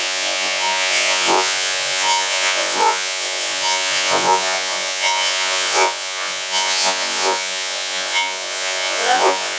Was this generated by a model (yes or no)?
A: yes